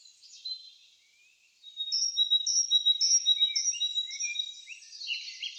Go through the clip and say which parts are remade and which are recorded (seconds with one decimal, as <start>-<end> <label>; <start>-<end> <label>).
0.0-5.6 recorded